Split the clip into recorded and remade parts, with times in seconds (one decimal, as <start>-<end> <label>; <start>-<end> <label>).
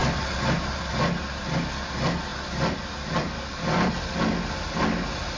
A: 0.0-5.4 recorded